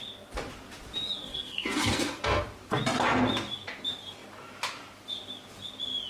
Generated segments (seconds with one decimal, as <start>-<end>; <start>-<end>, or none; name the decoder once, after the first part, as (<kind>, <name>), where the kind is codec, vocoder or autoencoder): 1.2-2.4 (codec, SNAC)